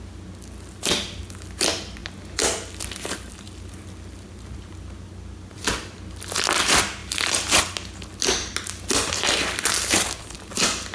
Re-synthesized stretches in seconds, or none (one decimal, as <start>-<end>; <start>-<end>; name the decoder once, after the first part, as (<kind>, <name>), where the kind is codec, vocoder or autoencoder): none